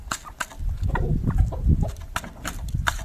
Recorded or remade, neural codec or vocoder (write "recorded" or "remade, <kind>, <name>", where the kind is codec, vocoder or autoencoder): recorded